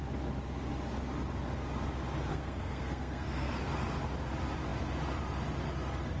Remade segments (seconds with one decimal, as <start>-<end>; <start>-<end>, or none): 2.3-3.5